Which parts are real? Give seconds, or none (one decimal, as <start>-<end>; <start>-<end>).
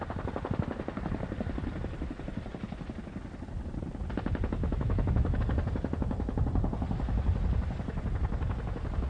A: 0.0-4.6; 5.4-9.1